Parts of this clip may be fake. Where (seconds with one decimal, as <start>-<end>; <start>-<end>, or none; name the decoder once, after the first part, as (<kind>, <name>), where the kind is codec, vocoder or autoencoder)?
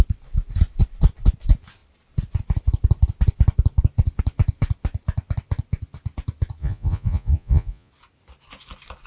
6.6-7.9 (vocoder, Vocos)